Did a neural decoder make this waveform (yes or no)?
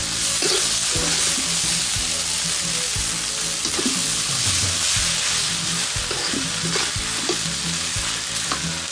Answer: no